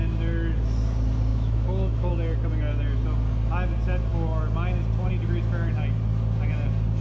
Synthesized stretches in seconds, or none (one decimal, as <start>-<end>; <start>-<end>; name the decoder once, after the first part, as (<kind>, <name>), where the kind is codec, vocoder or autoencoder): 1.3-2.1 (autoencoder, DAC-VAE)